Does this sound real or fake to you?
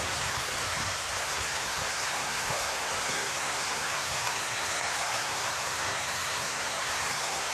fake